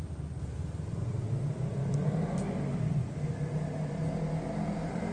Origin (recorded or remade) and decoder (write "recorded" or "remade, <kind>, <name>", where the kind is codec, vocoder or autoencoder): recorded